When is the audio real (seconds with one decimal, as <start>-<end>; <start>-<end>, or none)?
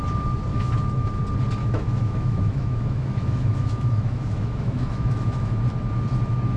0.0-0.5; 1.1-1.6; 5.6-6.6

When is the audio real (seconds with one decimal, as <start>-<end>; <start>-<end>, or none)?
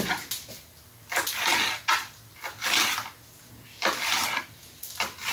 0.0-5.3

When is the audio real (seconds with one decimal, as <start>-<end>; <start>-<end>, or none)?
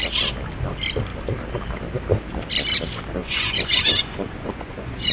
0.0-3.2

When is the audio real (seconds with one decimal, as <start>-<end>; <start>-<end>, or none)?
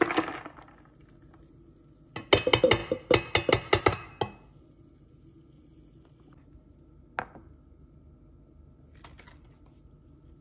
0.0-10.4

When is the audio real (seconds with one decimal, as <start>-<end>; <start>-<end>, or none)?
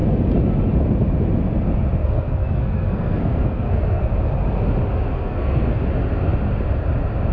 0.0-2.0; 4.1-5.1; 5.8-7.3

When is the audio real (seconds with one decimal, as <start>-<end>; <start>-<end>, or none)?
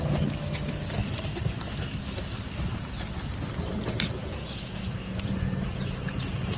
0.0-4.2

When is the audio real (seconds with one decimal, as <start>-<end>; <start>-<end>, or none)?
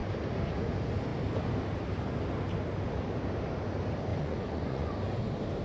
0.0-4.1; 4.9-5.6